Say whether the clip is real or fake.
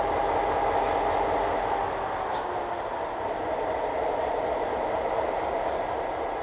real